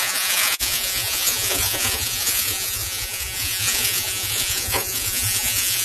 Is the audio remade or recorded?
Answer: remade